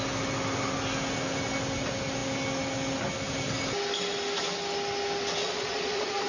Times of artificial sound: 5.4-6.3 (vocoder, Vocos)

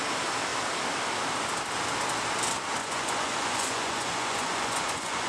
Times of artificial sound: 2.8-5.3 (vocoder, Vocos)

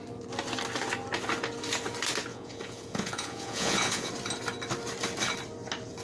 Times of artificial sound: 2.3-4.1 (vocoder, Vocos)